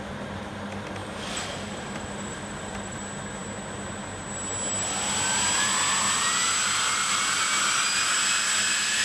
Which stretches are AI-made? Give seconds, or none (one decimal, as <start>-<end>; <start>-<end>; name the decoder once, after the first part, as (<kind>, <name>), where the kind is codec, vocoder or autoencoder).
1.0-3.0 (vocoder, BigVGAN v2)